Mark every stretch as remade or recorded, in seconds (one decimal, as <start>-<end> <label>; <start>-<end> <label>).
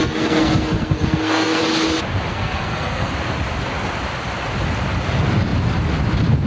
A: 0.0-1.6 remade; 1.6-2.3 recorded; 2.3-3.1 remade; 3.1-6.5 recorded